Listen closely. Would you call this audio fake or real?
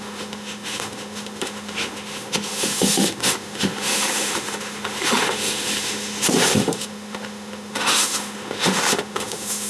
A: fake